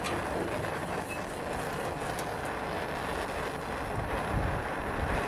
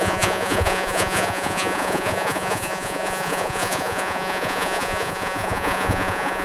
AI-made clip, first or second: second